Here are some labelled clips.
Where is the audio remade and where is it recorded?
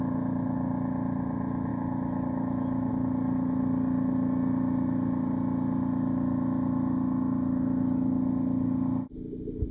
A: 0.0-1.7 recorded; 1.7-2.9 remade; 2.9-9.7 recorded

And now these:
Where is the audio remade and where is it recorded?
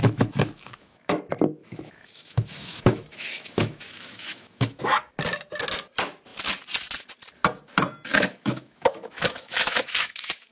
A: 0.0-1.2 remade; 1.2-1.6 recorded; 1.6-4.8 remade; 4.8-8.1 recorded; 8.1-10.5 remade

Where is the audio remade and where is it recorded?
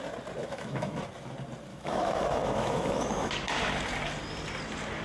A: 0.0-0.4 recorded; 0.4-1.0 remade; 1.0-1.7 recorded; 1.7-3.3 remade; 3.3-5.0 recorded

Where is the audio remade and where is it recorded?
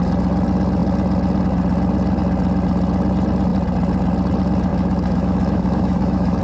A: 0.0-4.7 recorded; 4.7-6.4 remade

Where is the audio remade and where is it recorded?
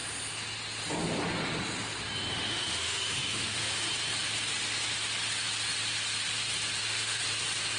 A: 0.0-2.3 recorded; 2.3-3.9 remade; 3.9-6.8 recorded; 6.8-7.2 remade; 7.2-7.8 recorded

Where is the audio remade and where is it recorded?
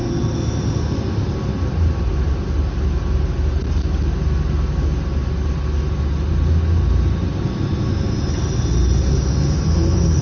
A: 0.0-10.2 recorded